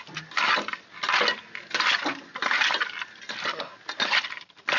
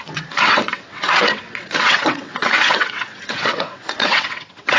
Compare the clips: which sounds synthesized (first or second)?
second